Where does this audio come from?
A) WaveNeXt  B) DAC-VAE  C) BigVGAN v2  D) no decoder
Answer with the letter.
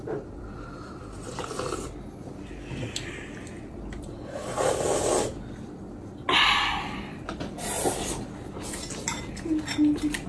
D